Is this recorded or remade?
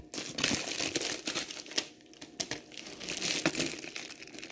recorded